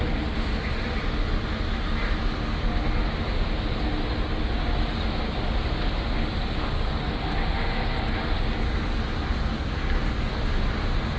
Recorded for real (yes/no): yes